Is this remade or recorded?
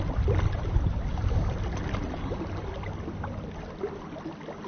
recorded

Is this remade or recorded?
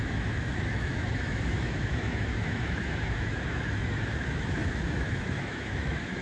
remade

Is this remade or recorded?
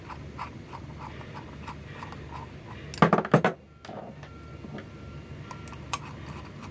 recorded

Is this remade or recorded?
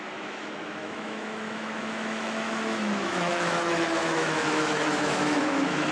remade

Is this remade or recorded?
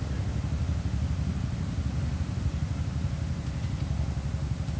recorded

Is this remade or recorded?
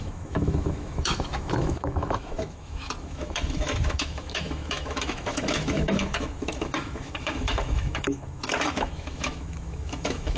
remade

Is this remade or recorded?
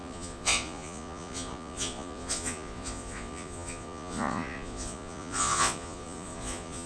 remade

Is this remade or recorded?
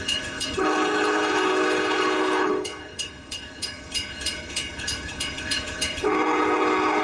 remade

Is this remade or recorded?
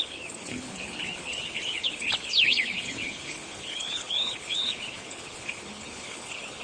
remade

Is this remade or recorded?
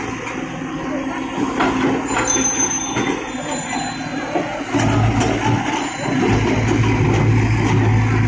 recorded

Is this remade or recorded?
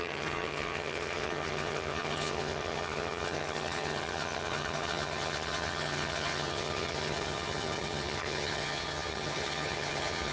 remade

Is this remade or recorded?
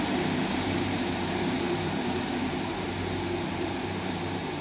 remade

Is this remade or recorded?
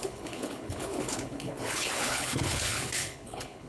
remade